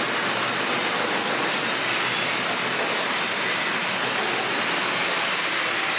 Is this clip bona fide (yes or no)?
yes